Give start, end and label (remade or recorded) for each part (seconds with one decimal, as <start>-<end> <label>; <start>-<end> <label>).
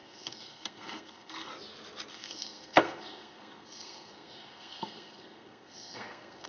0.0-1.5 remade; 1.5-2.1 recorded; 2.1-6.5 remade